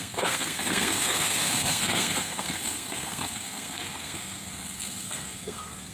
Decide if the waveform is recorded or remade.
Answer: remade